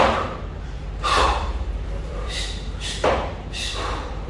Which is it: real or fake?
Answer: fake